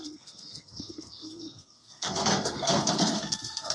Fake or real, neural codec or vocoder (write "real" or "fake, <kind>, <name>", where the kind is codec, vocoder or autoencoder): fake, codec, SNAC